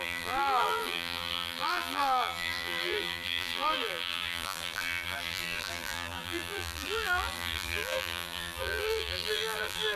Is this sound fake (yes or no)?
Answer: yes